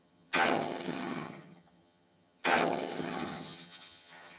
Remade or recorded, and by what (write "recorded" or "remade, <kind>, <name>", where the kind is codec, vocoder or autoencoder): remade, vocoder, HiFi-GAN